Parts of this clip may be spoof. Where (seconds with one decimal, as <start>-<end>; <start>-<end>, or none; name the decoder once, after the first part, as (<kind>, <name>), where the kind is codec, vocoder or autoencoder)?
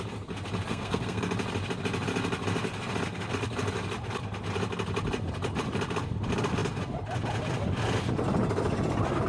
0.7-1.2 (codec, SNAC)